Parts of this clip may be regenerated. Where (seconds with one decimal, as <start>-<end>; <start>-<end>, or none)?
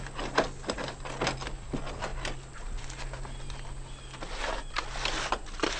none